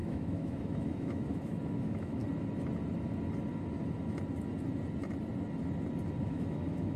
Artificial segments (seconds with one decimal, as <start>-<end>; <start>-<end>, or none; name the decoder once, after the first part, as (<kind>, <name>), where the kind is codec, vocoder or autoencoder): 0.0-2.2 (autoencoder, DAC-VAE); 6.2-7.0